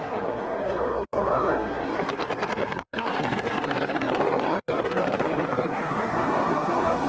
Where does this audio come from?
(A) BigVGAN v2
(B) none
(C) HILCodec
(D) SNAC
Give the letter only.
D